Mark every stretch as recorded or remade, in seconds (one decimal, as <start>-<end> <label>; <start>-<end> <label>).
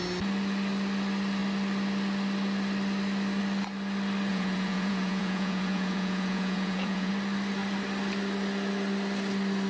0.0-4.3 recorded; 4.3-7.1 remade; 7.1-9.7 recorded